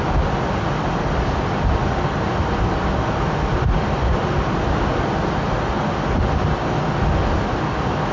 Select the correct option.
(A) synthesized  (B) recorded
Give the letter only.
B